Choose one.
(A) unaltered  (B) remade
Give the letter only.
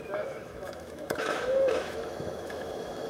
B